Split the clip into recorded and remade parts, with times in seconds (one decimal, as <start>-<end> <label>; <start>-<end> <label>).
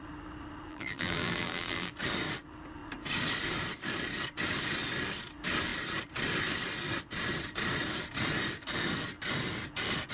0.0-0.7 recorded; 0.7-1.9 remade; 1.9-10.1 recorded